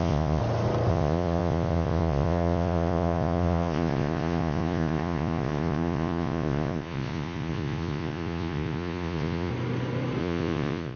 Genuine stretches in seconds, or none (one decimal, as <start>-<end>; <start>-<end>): 0.4-0.9; 9.5-10.2